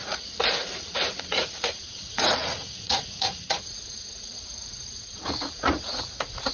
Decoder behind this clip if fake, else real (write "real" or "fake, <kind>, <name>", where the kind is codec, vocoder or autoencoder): fake, vocoder, Vocos